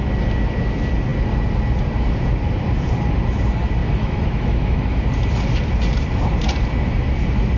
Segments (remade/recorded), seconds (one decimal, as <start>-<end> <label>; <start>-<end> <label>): 0.0-3.8 recorded; 3.8-5.0 remade; 5.0-7.6 recorded